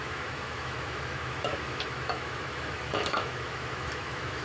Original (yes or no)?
no